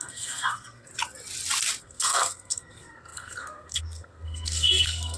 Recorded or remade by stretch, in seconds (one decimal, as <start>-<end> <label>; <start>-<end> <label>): 0.0-0.9 remade; 0.9-1.8 recorded; 1.8-5.2 remade